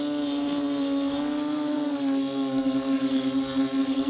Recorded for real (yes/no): no